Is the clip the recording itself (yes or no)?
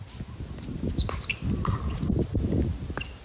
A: yes